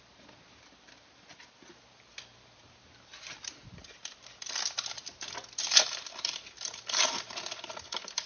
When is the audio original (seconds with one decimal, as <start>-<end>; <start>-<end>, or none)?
0.0-8.3